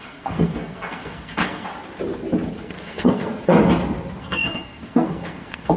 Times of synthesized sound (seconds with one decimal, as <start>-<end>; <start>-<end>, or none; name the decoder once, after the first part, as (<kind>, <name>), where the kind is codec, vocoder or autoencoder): 0.0-1.7 (codec, SNAC); 2.6-3.6; 4.2-5.8